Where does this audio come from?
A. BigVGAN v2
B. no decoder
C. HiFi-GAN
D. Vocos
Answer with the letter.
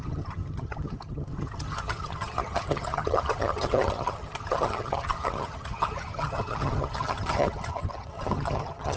C